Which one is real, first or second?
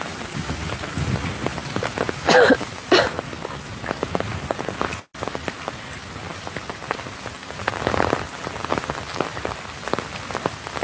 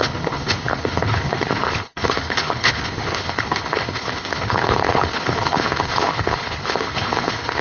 first